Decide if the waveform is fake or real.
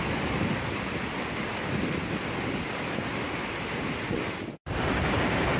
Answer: real